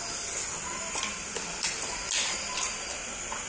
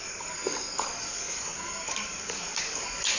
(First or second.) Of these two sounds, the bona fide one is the first